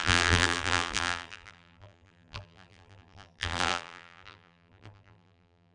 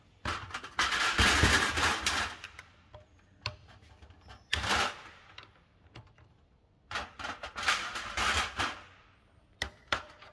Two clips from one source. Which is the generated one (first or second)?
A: first